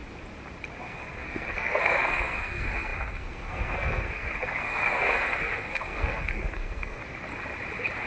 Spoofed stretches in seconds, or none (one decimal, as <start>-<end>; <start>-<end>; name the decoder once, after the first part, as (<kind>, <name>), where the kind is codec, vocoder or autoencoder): 0.8-7.0 (codec, SNAC)